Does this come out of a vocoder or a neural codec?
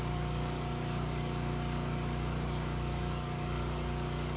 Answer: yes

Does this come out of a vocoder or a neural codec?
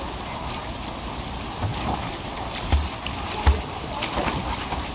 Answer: no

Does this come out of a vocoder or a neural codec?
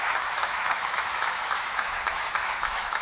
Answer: yes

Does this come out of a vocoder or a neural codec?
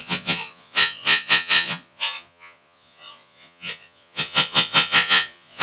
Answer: yes